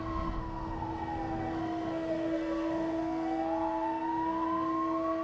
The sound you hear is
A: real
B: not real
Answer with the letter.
B